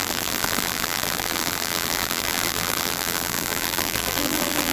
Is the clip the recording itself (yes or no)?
no